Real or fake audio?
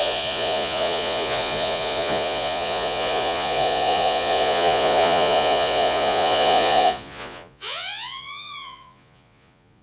fake